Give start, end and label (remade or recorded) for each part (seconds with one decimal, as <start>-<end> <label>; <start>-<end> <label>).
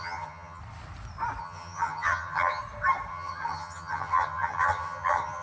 0.0-0.6 remade; 0.6-1.4 recorded; 1.4-2.6 remade; 2.6-3.1 recorded; 3.1-5.4 remade